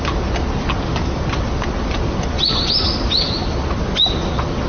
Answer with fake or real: real